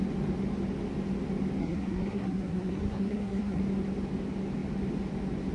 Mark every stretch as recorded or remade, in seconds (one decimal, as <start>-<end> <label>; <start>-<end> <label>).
0.0-1.6 recorded; 1.6-3.6 remade; 3.6-5.5 recorded